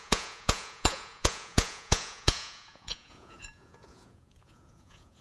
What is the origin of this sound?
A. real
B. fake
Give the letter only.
B